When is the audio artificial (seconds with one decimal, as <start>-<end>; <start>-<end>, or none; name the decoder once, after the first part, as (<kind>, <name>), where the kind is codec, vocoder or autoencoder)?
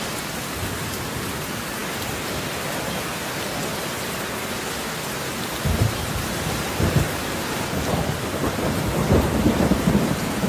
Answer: none